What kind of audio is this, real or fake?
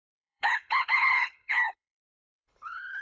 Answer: fake